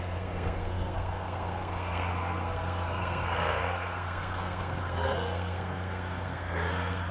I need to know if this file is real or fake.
fake